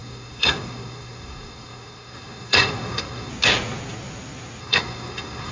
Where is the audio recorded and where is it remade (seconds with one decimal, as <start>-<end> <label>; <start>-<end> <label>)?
0.0-3.3 remade; 3.3-4.6 recorded; 4.6-5.5 remade